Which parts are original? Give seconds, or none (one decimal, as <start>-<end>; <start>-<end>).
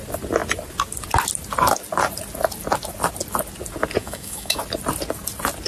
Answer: 0.0-4.0; 4.6-5.7